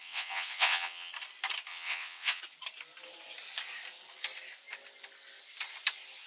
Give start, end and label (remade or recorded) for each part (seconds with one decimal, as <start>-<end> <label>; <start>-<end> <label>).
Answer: 0.0-1.1 remade; 1.1-1.7 recorded; 1.7-2.4 remade; 2.4-6.3 recorded